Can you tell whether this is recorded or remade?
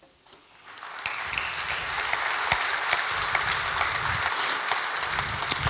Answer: recorded